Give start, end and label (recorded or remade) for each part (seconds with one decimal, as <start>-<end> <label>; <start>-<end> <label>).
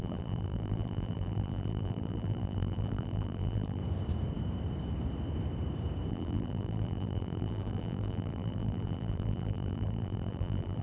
0.0-3.8 remade; 3.8-6.1 recorded; 6.1-10.8 remade